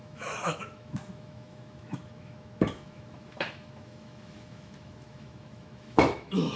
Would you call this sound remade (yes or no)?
yes